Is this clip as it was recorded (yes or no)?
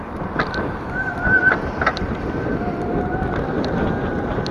yes